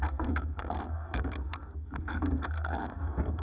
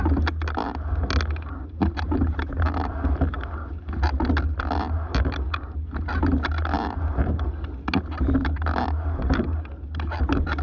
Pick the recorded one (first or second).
second